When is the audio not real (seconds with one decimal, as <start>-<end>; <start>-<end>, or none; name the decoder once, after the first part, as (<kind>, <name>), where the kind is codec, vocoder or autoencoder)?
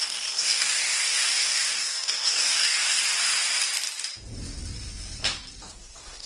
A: 0.0-3.0 (codec, DAC); 5.6-6.3